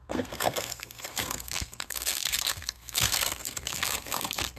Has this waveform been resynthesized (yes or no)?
yes